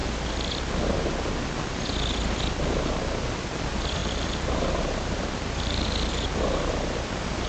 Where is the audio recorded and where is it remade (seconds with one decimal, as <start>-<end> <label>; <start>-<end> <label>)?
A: 0.0-4.0 recorded; 4.0-6.1 remade; 6.1-7.5 recorded